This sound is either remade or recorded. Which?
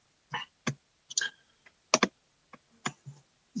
recorded